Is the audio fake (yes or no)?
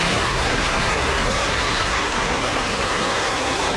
yes